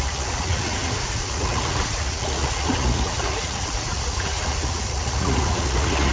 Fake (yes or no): yes